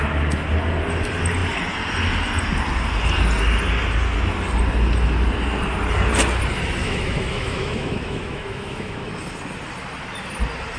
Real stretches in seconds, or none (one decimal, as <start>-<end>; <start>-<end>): 0.0-6.8; 9.1-10.8